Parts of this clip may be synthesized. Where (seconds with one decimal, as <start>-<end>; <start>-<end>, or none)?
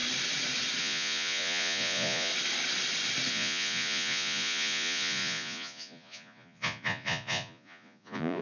0.8-2.3; 3.3-8.4